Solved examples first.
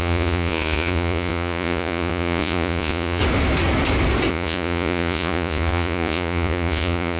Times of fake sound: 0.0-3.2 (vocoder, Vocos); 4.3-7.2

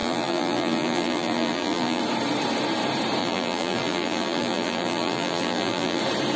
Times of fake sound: 0.0-2.0 (vocoder, BigVGAN v2); 3.2-6.0

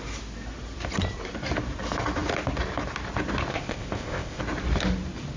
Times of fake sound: 3.5-4.4 (codec, ZipCodec)

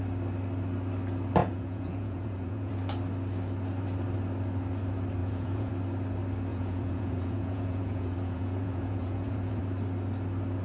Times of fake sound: 1.4-2.7 (vocoder, Vocos); 5.2-5.7; 6.5-9.6